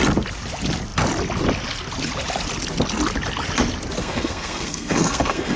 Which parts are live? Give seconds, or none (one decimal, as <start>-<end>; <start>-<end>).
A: 0.0-4.0